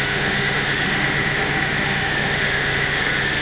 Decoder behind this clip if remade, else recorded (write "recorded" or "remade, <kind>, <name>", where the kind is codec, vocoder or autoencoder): remade, autoencoder, DAC-VAE